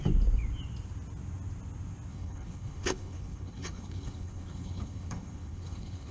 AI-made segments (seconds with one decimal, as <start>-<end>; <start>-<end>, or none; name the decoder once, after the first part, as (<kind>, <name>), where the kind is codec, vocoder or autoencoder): 2.1-6.1 (codec, HILCodec)